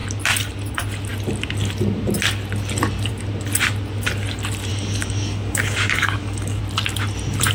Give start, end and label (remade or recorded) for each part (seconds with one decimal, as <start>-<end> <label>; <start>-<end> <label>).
0.0-4.7 recorded; 4.7-6.6 remade; 6.6-7.5 recorded